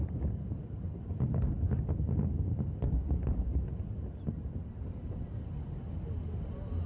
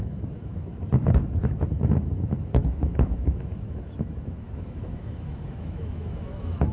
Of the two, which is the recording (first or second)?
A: first